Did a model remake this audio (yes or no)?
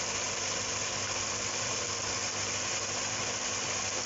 no